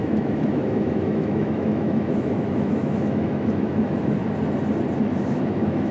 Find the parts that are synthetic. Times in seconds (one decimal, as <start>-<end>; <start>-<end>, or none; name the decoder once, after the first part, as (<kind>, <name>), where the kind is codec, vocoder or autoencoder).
0.0-4.2 (autoencoder, DAC-VAE); 5.0-5.9